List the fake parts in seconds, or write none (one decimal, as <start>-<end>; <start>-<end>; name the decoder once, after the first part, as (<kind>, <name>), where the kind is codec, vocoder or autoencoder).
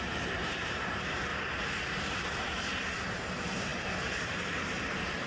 0.0-1.3 (vocoder, BigVGAN v2); 1.9-5.3